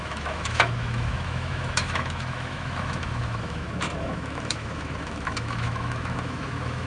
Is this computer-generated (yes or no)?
yes